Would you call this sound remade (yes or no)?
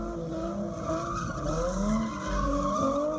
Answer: no